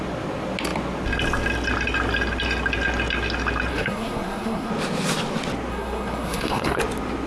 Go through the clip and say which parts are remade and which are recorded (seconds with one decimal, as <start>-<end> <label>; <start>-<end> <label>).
0.0-3.7 recorded; 3.7-4.7 remade; 4.7-5.7 recorded; 5.7-6.8 remade; 6.8-7.3 recorded